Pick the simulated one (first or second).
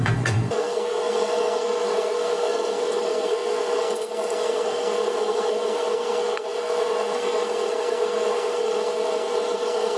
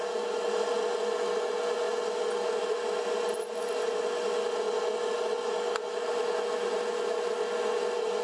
first